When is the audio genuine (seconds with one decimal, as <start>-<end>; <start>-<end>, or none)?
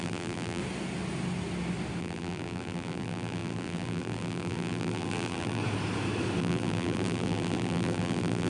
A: 0.6-2.0; 5.6-6.4